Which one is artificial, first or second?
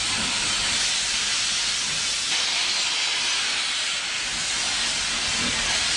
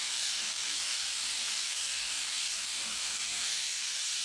second